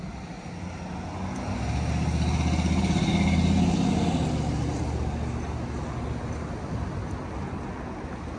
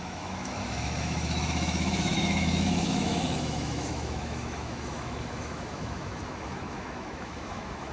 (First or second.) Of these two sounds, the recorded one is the first